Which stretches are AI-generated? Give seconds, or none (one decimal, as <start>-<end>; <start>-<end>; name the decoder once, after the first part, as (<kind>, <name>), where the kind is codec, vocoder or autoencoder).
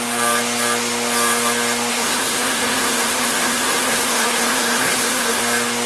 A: 1.9-5.4 (codec, SNAC)